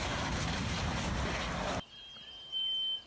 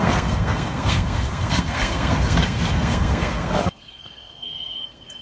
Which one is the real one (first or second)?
first